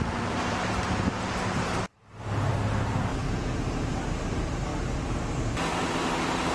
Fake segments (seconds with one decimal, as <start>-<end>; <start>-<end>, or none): 0.0-3.1; 3.7-4.7; 5.8-6.5